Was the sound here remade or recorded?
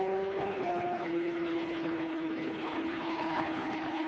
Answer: remade